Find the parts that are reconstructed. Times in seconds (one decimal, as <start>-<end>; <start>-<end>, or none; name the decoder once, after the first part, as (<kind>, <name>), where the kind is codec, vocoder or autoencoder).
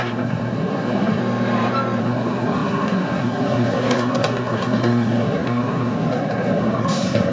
0.0-1.2 (codec, SNAC); 2.0-7.3